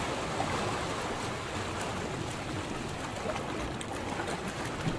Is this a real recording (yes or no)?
yes